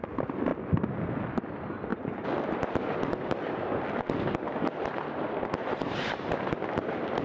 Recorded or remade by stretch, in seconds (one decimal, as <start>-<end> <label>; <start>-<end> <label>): 0.0-1.9 recorded; 1.9-3.0 remade; 3.0-7.2 recorded